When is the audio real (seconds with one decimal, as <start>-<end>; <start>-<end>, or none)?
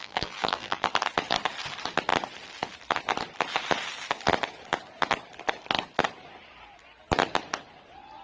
0.9-8.2